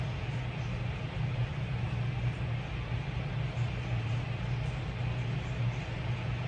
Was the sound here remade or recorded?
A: recorded